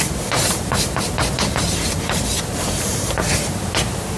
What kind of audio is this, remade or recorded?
remade